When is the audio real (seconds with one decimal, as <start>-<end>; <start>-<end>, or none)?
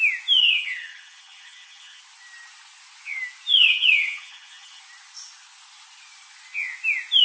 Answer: 0.0-0.4; 2.0-3.5; 4.8-7.2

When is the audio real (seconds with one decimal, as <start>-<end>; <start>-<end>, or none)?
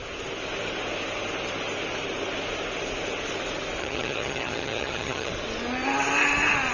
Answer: 0.0-3.8; 5.3-6.7